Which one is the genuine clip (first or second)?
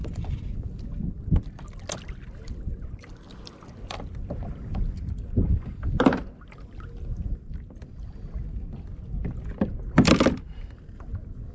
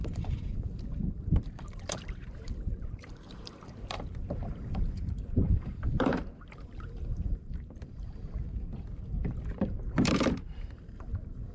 first